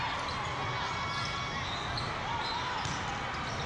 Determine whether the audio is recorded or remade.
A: recorded